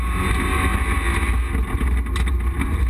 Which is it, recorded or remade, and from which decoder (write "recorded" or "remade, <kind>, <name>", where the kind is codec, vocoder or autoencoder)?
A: recorded